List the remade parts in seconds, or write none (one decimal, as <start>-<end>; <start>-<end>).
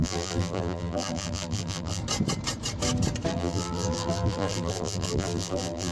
0.0-2.0; 3.3-5.9